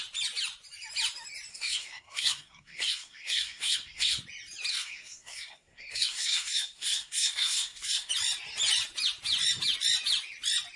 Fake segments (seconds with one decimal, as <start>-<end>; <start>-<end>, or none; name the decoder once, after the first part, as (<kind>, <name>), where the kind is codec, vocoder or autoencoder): 1.5-4.2 (codec, SNAC); 4.7-8.1